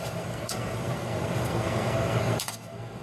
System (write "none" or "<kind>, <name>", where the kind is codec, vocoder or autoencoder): codec, SNAC